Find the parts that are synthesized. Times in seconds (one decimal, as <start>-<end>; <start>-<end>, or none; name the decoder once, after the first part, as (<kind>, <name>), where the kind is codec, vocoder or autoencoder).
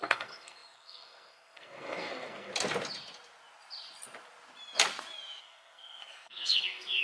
0.0-2.5 (codec, SNAC); 5.4-7.0